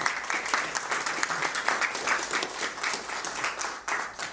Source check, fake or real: real